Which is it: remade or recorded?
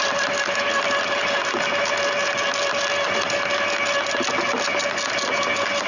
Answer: recorded